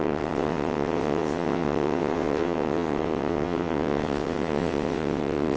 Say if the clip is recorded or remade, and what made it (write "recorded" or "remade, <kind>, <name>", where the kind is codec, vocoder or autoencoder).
remade, vocoder, WaveNeXt